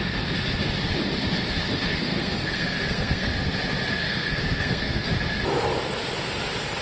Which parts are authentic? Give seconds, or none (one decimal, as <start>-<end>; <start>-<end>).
0.0-1.9; 3.3-4.0; 5.1-6.8